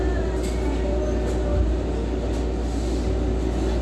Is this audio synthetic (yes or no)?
no